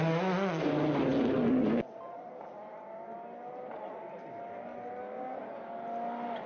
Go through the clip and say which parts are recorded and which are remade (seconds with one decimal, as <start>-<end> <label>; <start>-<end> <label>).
0.0-6.5 recorded